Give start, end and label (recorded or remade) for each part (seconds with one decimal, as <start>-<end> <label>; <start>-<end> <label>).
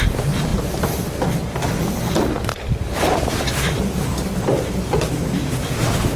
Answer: 0.0-2.5 recorded; 2.5-3.8 remade; 3.8-6.2 recorded